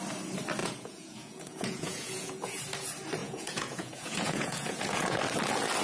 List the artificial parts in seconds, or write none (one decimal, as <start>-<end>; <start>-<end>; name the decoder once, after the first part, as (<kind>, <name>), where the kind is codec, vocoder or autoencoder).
0.6-2.6 (vocoder, Vocos); 3.2-5.2